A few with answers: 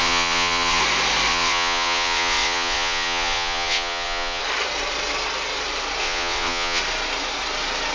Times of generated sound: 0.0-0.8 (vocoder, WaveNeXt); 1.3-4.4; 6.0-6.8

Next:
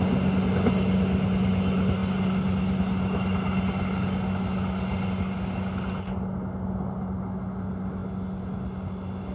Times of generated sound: none

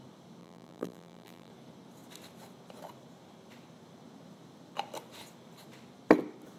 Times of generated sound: 0.4-1.5 (vocoder, BigVGAN v2)

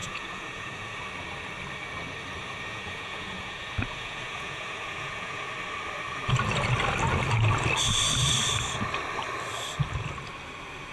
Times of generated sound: 0.0-0.8 (vocoder, Vocos); 2.7-5.5

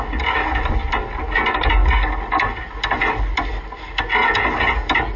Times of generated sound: none

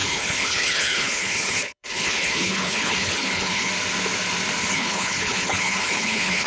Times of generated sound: 0.0-3.7 (codec, HILCodec); 4.7-6.5

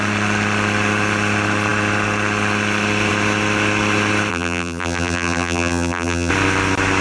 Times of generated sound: 4.3-6.3 (vocoder, BigVGAN v2)

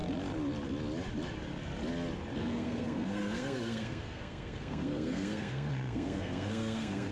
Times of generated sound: 2.4-7.1 (codec, SNAC)